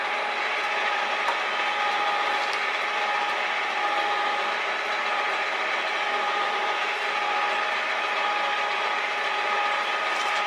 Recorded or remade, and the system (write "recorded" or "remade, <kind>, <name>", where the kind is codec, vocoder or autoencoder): remade, vocoder, BigVGAN v2